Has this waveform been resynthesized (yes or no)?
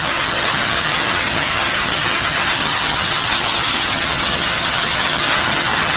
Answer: yes